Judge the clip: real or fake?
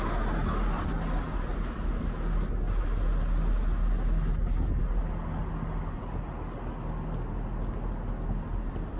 real